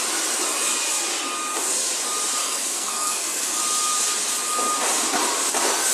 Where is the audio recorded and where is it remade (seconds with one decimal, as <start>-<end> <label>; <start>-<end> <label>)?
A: 0.0-2.4 recorded; 2.4-3.6 remade; 3.6-5.9 recorded